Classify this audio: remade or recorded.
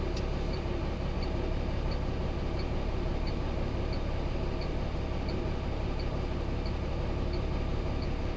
recorded